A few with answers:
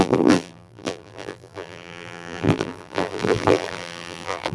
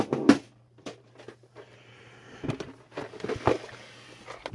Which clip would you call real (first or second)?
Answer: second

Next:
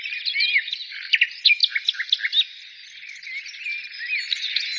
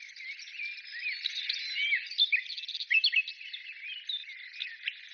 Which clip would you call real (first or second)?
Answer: first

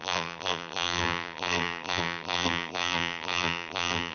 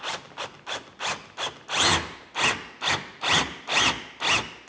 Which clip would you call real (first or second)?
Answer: second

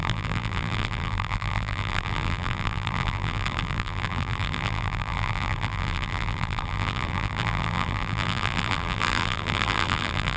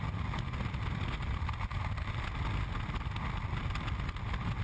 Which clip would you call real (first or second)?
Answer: second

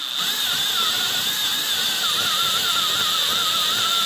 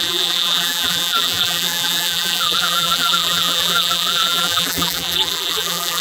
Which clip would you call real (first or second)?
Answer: first